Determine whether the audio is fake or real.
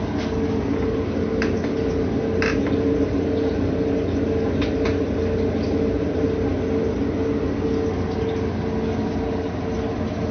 real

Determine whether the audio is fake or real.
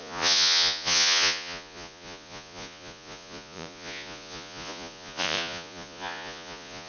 fake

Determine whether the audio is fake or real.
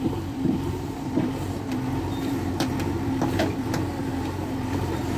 fake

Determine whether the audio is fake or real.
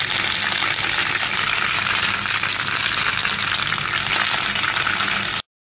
real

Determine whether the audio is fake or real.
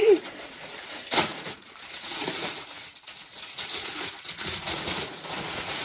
fake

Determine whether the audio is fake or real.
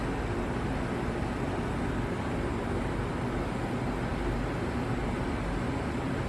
real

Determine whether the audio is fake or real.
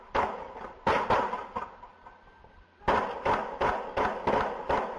real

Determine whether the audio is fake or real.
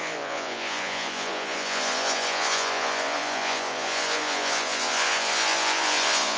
fake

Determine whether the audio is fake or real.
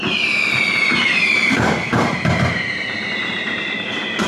fake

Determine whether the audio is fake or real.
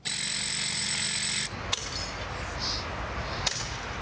real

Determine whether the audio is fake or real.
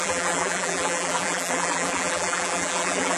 fake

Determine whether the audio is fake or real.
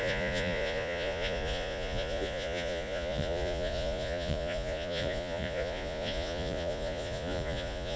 fake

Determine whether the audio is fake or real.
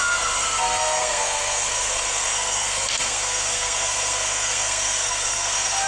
fake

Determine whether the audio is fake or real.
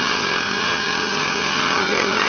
fake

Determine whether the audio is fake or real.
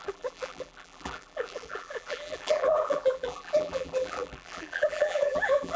fake